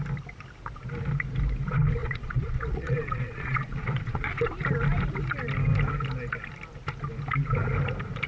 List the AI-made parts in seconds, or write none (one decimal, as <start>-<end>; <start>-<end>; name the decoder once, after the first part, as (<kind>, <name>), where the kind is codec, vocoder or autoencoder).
2.0-4.5 (vocoder, Vocos)